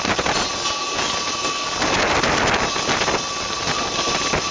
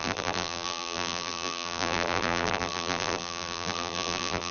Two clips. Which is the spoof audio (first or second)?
second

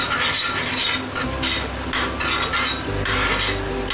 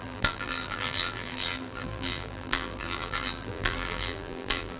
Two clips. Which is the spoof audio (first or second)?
second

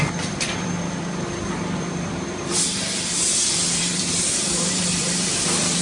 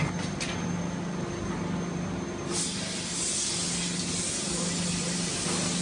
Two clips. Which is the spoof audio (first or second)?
first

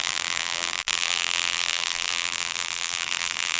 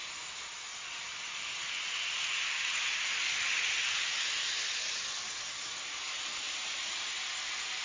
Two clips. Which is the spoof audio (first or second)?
first